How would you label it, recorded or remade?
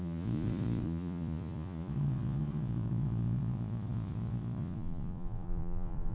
remade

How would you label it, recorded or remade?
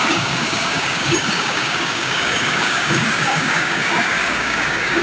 remade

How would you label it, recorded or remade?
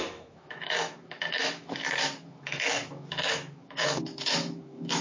remade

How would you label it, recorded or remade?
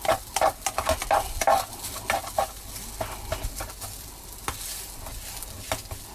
recorded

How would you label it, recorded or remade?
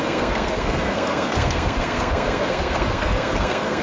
remade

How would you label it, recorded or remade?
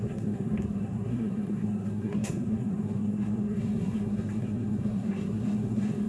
remade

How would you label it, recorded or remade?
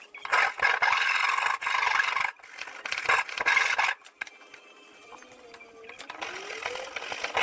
recorded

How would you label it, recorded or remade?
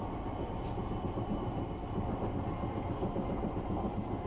recorded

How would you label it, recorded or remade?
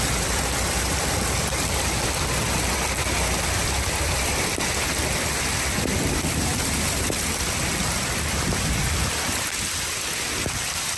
remade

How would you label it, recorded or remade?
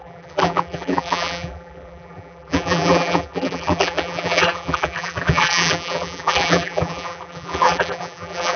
remade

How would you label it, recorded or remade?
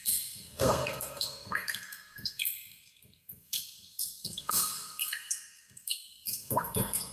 remade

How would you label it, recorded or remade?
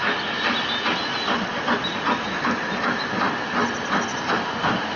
recorded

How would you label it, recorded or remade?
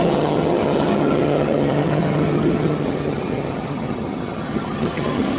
remade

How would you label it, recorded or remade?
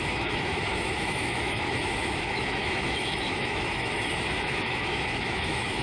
remade